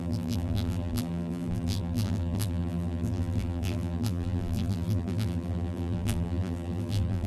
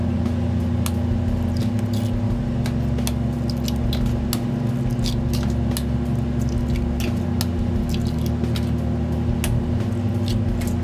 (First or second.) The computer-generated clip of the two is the first